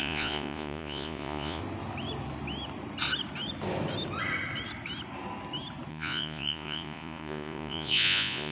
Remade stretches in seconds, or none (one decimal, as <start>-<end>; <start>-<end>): 0.0-1.6; 5.9-8.5